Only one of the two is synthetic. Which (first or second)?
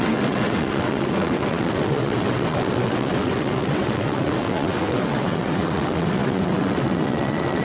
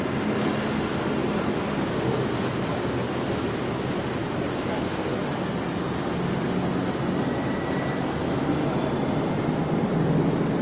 first